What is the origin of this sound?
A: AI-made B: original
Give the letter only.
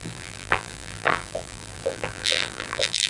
A